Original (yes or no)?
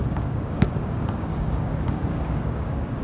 no